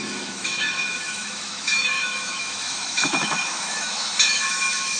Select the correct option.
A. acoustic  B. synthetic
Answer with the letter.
B